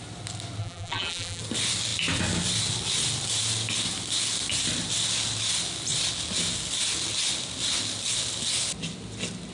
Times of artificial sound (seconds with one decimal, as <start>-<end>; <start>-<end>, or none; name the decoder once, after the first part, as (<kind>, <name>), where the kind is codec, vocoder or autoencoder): 0.6-1.4 (vocoder, BigVGAN v2)